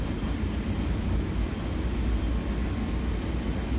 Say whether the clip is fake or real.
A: real